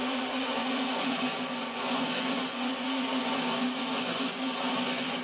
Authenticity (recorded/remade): remade